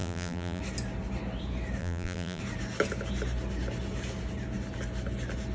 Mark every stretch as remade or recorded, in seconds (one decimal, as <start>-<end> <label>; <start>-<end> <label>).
0.0-0.6 remade; 0.6-1.8 recorded; 1.8-2.4 remade; 2.4-5.5 recorded